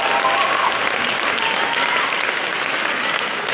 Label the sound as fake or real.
real